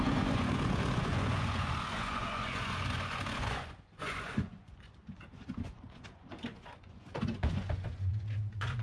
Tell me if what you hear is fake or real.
fake